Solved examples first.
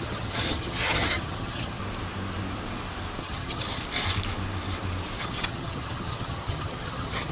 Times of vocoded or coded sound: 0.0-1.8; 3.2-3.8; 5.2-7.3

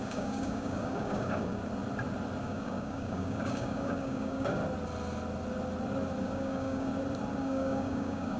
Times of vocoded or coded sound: 0.0-1.6; 2.4-4.6; 6.2-6.9; 7.4-8.4

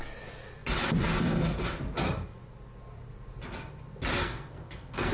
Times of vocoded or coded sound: 4.2-5.1

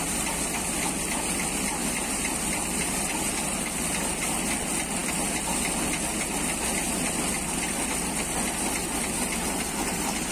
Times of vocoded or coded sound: none

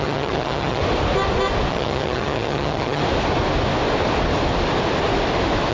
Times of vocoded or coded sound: 0.0-0.8; 1.7-3.0